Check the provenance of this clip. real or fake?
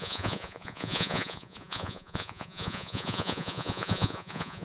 fake